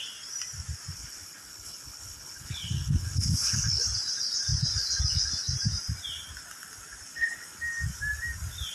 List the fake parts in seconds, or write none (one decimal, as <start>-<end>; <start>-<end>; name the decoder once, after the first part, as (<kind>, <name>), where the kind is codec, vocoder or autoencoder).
0.9-3.8 (codec, HILCodec); 7.1-7.6